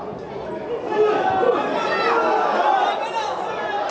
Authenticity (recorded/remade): recorded